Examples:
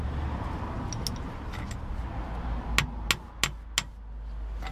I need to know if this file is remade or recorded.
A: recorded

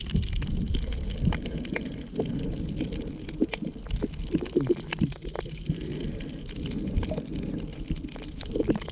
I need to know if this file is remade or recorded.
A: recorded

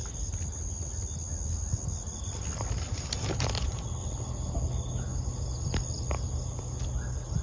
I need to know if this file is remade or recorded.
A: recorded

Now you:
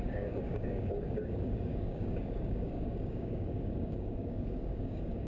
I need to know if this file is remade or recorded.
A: remade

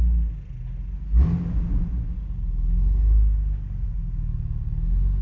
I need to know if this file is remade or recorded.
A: recorded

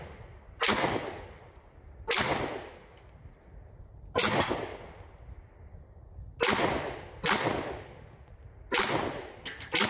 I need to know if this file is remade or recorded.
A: recorded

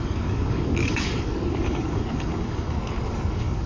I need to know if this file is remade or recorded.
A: remade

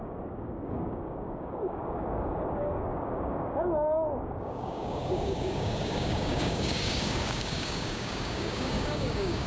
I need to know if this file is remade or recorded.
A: remade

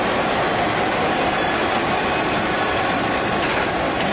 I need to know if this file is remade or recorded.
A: recorded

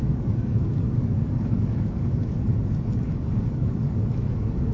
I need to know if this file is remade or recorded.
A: remade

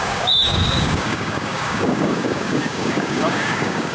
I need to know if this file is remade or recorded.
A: remade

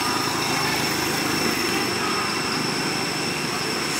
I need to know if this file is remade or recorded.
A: recorded